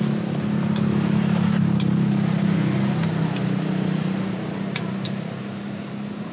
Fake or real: real